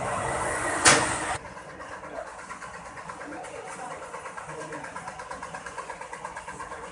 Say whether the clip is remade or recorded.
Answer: remade